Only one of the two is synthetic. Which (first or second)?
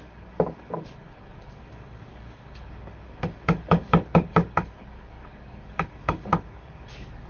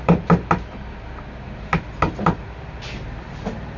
first